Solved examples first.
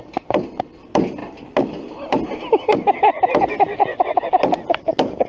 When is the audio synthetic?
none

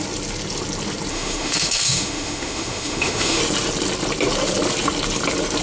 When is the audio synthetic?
1.1-3.4

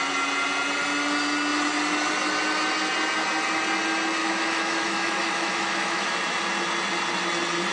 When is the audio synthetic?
4.2-6.1

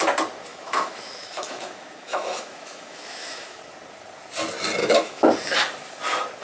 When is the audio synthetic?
0.5-3.6; 4.8-5.3

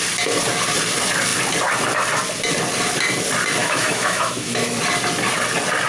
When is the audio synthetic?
3.6-4.8

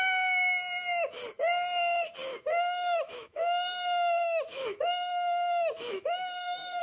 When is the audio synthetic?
2.3-6.8

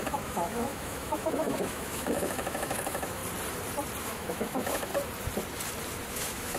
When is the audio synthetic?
0.0-3.2; 4.0-4.9; 6.1-6.6

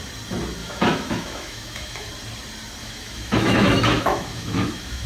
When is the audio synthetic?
0.6-2.1; 2.8-5.1